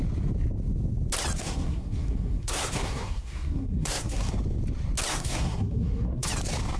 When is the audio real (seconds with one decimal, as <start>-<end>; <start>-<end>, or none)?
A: 0.0-1.4; 4.3-5.1; 6.3-6.8